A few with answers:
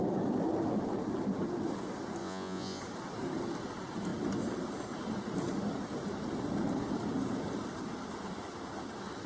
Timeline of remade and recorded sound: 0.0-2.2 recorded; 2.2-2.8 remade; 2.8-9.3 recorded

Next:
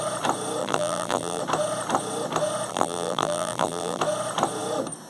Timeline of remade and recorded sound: 0.0-0.6 recorded; 0.6-1.4 remade; 1.4-2.7 recorded; 2.7-4.0 remade; 4.0-5.1 recorded

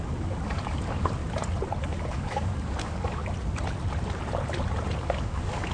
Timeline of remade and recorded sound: 0.0-1.2 remade; 1.2-1.8 recorded; 1.8-3.2 remade; 3.2-5.0 recorded; 5.0-5.7 remade

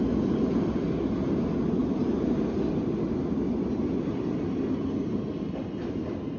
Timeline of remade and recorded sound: 0.0-6.4 recorded

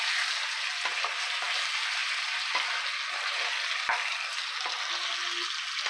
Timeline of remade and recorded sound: 0.0-5.9 recorded